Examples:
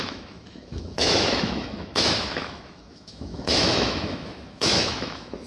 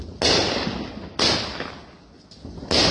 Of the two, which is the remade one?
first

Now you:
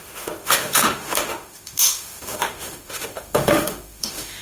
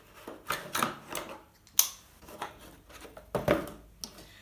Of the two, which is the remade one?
first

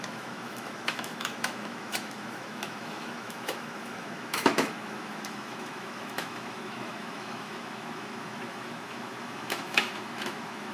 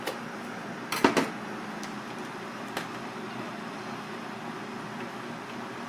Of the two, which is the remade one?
first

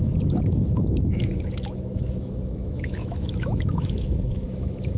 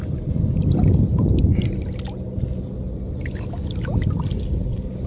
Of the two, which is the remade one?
first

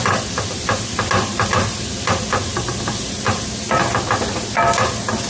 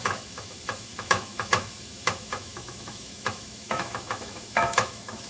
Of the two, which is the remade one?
second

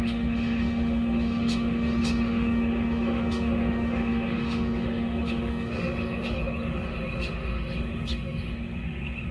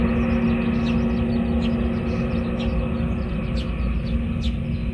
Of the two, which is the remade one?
first